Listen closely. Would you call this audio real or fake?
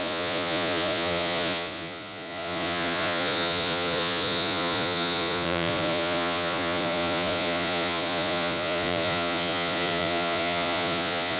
fake